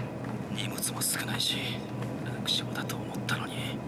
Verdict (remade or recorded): recorded